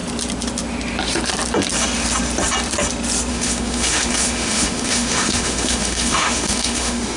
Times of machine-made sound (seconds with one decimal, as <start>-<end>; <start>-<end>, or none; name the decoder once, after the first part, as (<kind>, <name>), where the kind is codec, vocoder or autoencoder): 3.3-7.2 (autoencoder, DAC-VAE)